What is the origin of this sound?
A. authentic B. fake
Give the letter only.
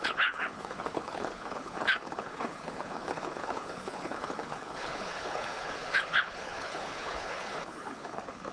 B